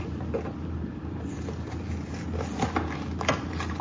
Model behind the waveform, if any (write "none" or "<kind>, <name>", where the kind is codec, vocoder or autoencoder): none